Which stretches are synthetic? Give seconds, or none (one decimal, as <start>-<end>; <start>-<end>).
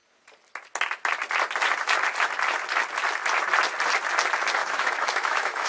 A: 4.6-5.7